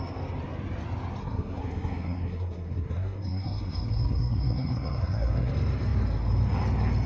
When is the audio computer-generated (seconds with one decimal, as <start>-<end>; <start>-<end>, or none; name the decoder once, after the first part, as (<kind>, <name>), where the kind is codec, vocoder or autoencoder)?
1.2-5.5 (codec, SNAC)